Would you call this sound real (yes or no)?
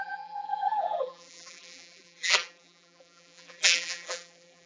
no